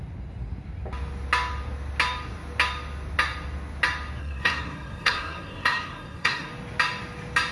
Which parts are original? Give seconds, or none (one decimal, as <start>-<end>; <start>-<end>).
0.0-4.2; 6.5-7.5